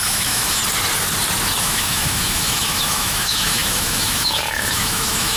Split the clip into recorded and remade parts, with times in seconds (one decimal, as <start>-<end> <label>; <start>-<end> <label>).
0.0-0.6 remade; 0.6-1.6 recorded; 1.6-5.4 remade